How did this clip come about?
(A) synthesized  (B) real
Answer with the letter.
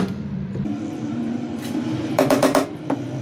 A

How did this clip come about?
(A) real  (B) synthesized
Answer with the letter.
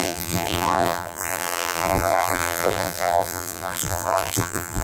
B